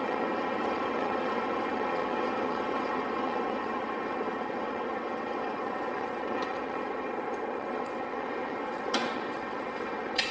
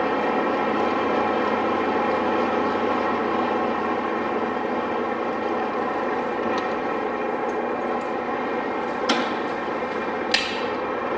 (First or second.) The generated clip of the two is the first